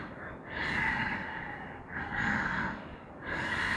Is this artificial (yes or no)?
yes